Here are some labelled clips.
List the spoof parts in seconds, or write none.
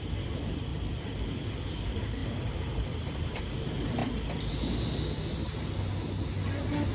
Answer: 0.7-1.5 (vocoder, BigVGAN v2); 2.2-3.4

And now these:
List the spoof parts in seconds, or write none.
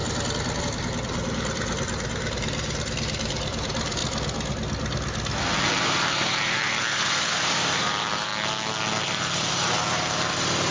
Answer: 0.6-4.0 (vocoder, BigVGAN v2); 5.8-8.3; 9.0-10.7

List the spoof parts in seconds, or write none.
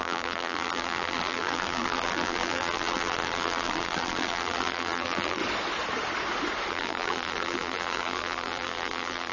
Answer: 0.0-5.4 (vocoder, BigVGAN v2); 6.7-9.3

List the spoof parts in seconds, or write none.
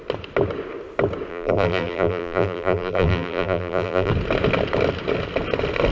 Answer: 1.3-4.1 (vocoder, BigVGAN v2)